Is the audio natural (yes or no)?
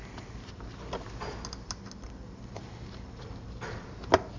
yes